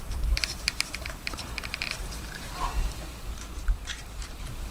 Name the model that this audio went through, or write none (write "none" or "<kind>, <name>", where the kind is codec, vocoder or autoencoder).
vocoder, BigVGAN v2